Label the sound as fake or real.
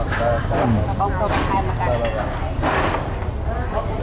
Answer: real